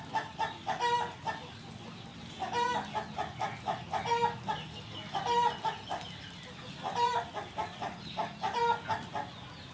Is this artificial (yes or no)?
no